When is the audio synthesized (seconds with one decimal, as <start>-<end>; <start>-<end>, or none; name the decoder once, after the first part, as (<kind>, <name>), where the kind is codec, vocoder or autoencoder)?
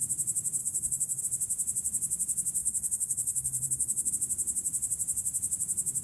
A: 0.6-1.2 (codec, HILCodec); 2.6-4.1